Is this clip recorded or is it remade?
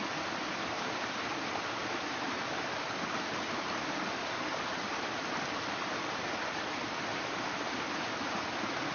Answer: recorded